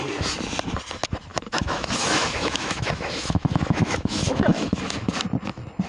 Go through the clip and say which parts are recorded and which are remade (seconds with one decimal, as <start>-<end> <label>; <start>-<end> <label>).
0.0-1.3 recorded; 1.3-4.8 remade; 4.8-5.9 recorded